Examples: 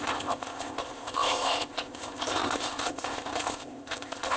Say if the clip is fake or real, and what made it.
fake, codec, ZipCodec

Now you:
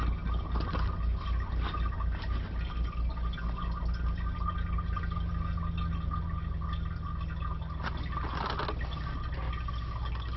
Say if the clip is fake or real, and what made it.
real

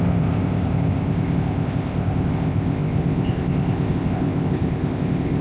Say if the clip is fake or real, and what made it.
fake, codec, ZipCodec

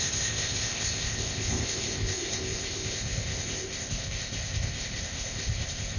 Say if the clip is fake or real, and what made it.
fake, codec, ZipCodec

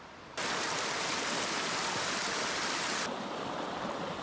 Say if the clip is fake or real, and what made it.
real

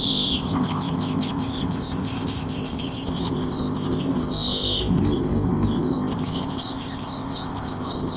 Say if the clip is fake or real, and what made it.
fake, codec, ZipCodec